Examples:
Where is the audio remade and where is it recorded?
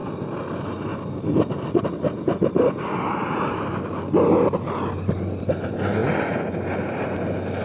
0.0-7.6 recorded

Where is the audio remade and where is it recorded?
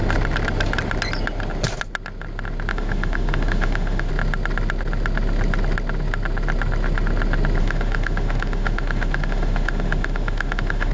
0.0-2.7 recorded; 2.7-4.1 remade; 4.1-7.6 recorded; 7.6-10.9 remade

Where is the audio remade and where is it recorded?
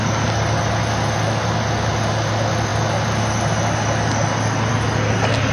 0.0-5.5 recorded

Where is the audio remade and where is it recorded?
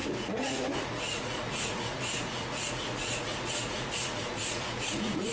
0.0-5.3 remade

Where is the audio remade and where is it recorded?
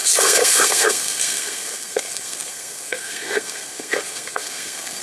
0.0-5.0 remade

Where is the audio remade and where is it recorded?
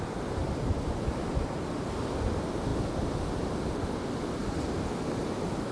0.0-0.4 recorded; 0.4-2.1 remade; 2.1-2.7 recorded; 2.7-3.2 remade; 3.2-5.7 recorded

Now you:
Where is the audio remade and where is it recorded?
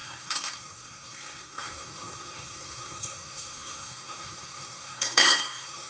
0.0-5.9 remade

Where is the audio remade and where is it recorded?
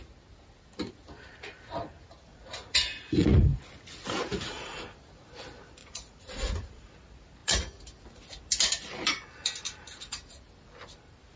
0.0-2.3 recorded; 2.3-3.6 remade; 3.6-4.3 recorded; 4.3-4.8 remade; 4.8-5.8 recorded; 5.8-6.9 remade; 6.9-11.4 recorded